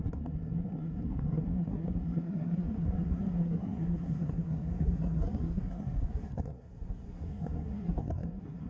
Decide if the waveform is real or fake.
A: fake